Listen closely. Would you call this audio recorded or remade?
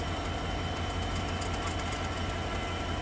recorded